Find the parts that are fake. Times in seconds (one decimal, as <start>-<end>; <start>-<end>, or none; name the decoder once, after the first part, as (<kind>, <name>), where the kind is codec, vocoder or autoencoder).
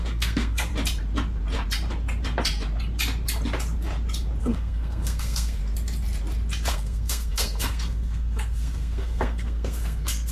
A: 0.0-0.7 (codec, SNAC); 4.4-5.6; 6.7-10.3